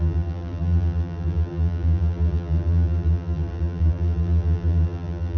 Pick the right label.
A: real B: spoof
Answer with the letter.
B